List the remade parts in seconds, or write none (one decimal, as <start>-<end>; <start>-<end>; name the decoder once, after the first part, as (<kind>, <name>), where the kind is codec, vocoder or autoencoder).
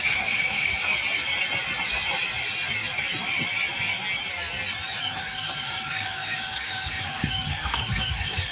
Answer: 0.0-0.7 (codec, DAC); 5.2-8.5